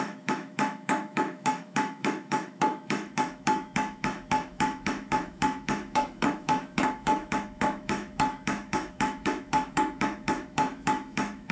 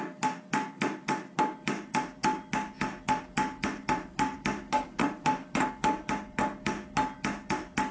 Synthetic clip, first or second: first